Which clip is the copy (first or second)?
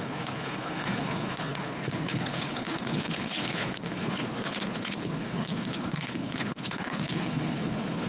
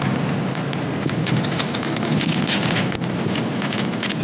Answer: first